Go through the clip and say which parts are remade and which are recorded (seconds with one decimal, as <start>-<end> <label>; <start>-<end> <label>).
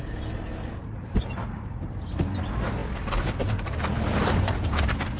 0.0-0.8 recorded; 0.8-1.7 remade; 1.7-5.2 recorded